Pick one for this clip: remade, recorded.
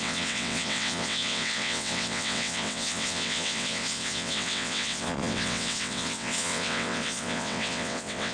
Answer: remade